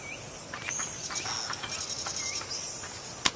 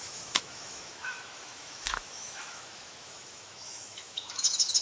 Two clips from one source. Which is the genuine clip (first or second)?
first